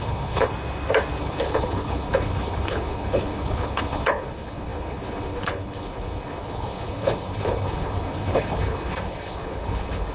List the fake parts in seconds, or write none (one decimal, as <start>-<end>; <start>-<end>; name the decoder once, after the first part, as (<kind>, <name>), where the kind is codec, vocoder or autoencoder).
0.0-0.5 (codec, HILCodec); 1.2-10.1